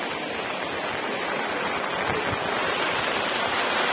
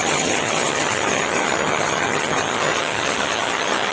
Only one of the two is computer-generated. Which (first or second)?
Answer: second